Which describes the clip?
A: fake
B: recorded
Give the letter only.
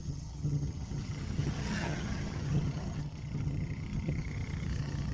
A